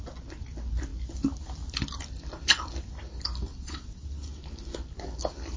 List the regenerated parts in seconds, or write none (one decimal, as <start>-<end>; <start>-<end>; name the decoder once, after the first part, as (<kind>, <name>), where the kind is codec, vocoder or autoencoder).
3.5-4.4 (vocoder, WaveNeXt)